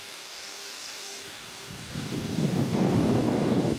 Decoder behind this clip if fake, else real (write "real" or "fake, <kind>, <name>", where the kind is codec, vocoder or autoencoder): fake, codec, DAC